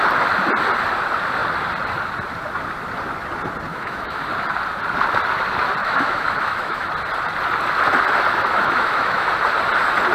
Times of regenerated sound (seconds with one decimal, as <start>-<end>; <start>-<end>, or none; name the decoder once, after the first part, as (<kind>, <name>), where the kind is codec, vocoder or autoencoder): 3.7-4.3 (autoencoder, DAC-VAE); 5.8-6.9; 8.3-9.3